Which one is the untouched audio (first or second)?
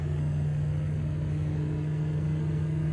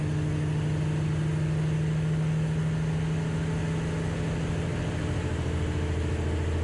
second